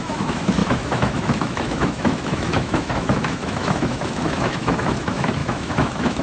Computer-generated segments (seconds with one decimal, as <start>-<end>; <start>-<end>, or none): 0.0-6.2